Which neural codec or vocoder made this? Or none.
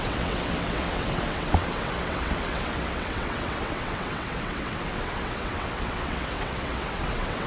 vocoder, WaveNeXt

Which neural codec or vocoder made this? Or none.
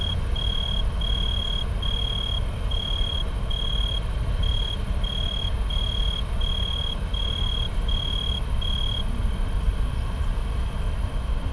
none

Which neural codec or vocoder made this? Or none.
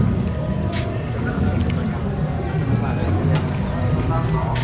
none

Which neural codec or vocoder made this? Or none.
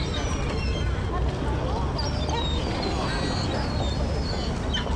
none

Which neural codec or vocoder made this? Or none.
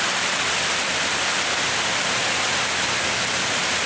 none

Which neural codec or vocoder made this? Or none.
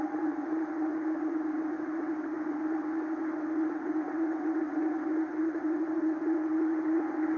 vocoder, WaveNeXt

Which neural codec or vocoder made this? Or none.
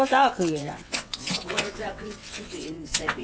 vocoder, WaveNeXt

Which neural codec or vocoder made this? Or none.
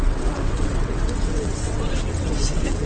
vocoder, WaveNeXt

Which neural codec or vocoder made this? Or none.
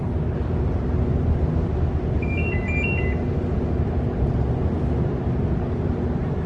none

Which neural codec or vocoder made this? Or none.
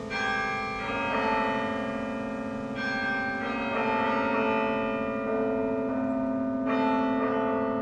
none